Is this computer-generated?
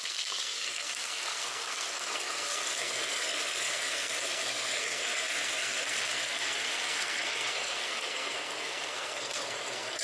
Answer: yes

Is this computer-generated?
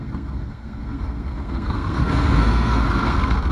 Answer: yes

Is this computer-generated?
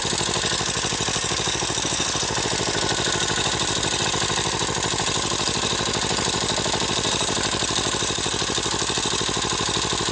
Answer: no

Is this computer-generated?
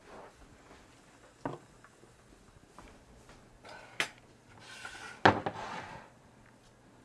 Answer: no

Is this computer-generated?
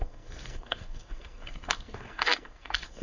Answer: yes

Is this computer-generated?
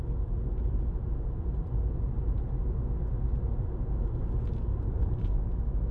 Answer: no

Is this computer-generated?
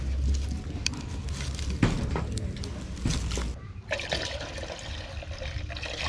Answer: no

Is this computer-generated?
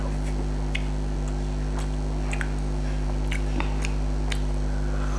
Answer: no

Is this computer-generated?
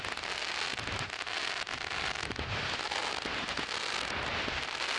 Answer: no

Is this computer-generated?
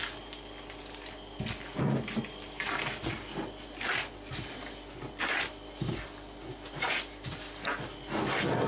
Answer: no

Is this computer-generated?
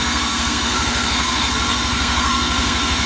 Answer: yes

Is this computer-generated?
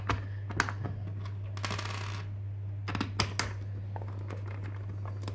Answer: no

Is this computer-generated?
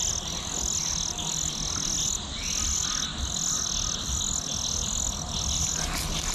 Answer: no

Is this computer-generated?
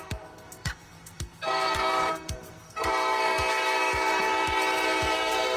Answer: yes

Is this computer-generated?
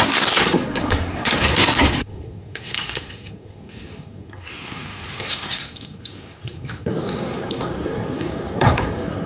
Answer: yes